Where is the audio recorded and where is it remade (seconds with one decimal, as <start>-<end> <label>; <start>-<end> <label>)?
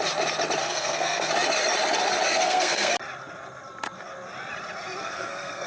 0.0-0.6 recorded; 0.6-1.3 remade; 1.3-2.3 recorded; 2.3-2.9 remade; 2.9-5.0 recorded; 5.0-5.7 remade